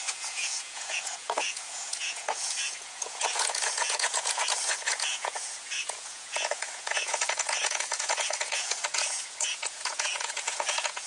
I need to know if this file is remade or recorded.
remade